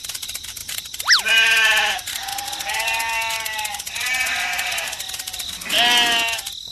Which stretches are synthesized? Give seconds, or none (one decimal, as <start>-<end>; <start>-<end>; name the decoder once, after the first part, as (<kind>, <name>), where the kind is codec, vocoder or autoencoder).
2.3-3.4 (vocoder, BigVGAN v2)